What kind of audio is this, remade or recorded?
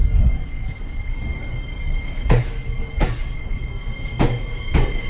remade